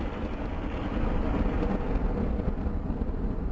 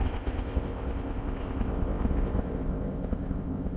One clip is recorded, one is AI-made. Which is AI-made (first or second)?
second